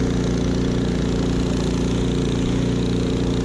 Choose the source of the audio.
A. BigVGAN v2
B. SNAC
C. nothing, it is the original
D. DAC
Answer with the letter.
C